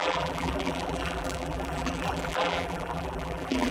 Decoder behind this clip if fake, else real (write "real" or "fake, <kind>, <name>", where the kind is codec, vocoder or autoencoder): fake, vocoder, BigVGAN v2